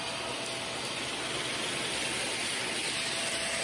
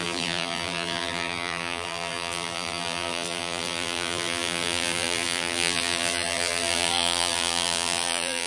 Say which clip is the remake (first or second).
second